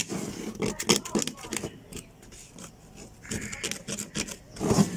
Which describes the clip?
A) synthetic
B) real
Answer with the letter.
B